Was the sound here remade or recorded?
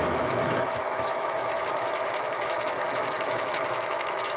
remade